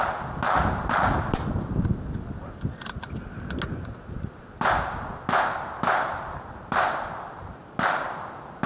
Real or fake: real